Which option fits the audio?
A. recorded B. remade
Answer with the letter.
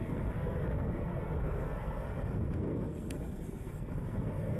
B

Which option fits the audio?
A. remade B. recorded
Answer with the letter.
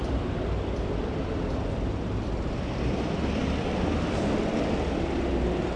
B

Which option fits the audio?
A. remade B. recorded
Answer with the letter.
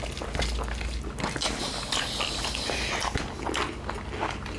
B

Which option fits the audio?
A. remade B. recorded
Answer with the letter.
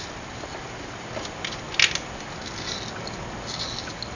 B